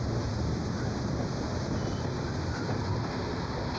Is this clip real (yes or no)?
yes